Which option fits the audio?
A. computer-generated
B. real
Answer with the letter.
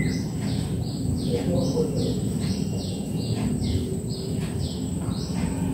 B